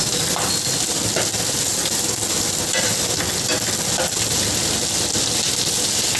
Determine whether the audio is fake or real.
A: real